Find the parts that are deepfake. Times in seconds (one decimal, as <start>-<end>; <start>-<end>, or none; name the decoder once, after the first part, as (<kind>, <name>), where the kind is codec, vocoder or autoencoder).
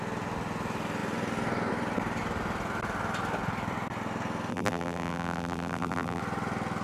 4.5-6.2 (vocoder, BigVGAN v2)